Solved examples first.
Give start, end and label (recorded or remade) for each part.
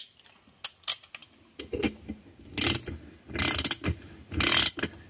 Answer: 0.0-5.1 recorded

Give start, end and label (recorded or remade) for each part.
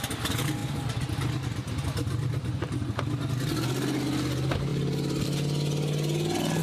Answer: 0.0-6.6 recorded